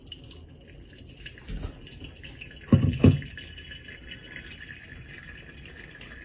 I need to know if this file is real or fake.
real